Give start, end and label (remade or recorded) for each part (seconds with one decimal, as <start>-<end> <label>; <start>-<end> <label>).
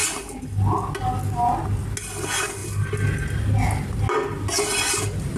0.0-5.4 recorded